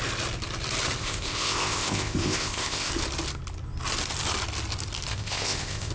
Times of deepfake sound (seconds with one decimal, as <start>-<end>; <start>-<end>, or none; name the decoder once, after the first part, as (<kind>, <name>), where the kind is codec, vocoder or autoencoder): 1.0-2.9 (codec, ZipCodec); 5.1-5.9